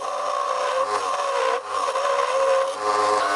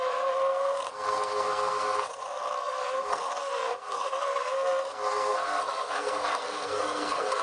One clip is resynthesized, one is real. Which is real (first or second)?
first